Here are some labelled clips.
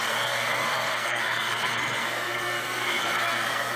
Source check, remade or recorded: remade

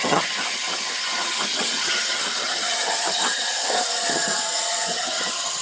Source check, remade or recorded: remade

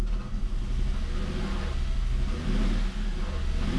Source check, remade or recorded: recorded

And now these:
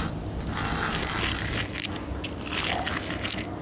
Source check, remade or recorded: recorded